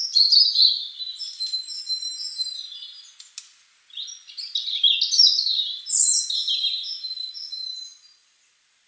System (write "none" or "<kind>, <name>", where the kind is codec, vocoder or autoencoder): none